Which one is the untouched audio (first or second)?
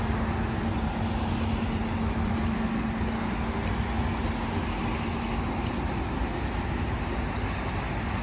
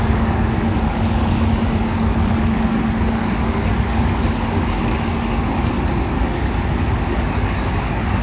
first